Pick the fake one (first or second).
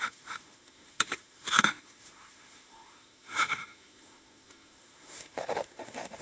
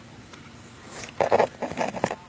first